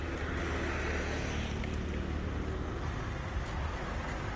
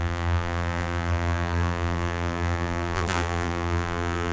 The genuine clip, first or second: first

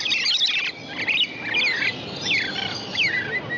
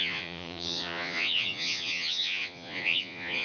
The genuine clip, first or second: first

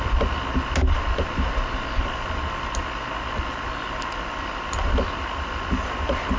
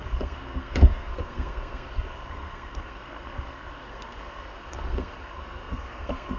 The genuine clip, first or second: first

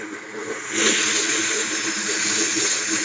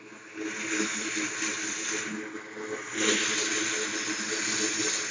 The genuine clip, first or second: second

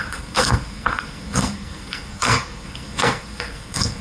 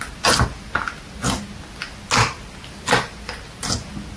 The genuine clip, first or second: second